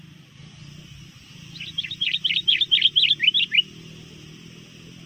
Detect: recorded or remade recorded